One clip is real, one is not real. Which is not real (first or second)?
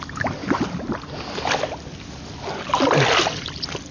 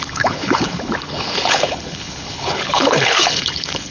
second